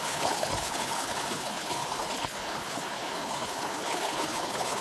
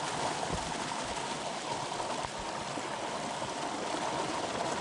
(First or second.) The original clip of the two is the second